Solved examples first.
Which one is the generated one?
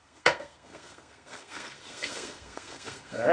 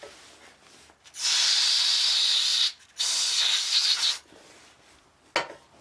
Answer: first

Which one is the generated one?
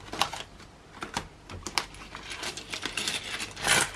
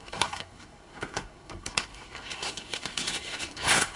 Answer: second